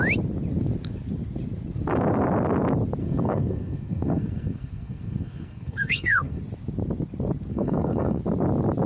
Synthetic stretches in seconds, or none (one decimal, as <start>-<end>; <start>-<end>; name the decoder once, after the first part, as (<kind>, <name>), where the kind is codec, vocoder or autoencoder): 3.0-6.4 (codec, SNAC); 7.5-8.2